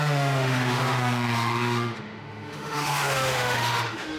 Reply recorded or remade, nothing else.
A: remade